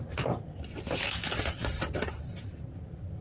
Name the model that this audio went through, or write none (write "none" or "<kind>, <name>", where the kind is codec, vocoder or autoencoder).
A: none